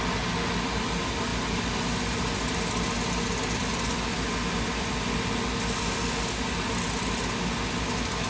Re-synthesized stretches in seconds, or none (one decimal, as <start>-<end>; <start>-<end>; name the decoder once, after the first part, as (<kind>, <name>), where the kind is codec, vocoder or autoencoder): none